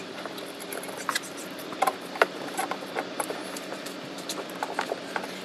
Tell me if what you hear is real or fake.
real